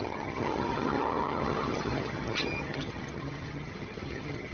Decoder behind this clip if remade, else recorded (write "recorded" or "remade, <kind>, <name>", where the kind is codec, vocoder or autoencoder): remade, vocoder, HiFi-GAN